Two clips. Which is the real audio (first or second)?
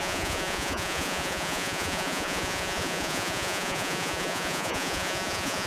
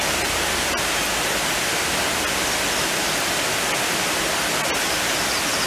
second